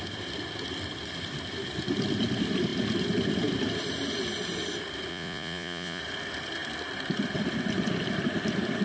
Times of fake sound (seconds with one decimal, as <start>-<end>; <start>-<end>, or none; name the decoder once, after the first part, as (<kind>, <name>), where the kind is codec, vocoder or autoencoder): 5.1-6.0 (vocoder, Vocos)